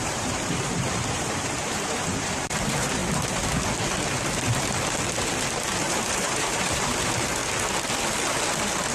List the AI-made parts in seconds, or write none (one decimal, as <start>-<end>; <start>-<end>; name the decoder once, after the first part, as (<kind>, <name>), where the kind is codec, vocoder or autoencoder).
0.0-3.0 (vocoder, BigVGAN v2); 5.8-7.4